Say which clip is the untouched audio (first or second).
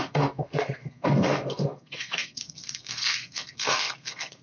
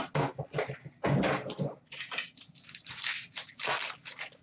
second